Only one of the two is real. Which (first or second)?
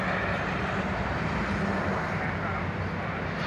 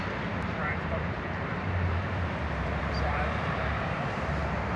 first